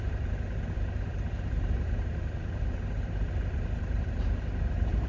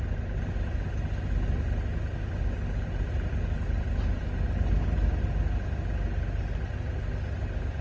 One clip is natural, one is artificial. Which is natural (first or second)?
second